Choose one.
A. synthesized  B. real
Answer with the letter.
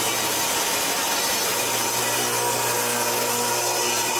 B